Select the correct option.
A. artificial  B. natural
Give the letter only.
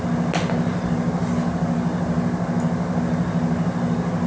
B